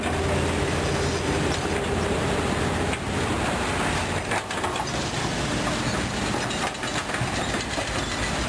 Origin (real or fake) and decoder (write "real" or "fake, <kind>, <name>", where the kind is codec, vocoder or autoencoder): real